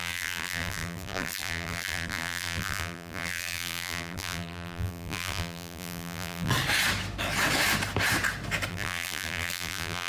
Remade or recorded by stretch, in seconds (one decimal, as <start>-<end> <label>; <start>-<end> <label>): 0.0-6.5 remade; 6.5-8.7 recorded; 8.7-10.1 remade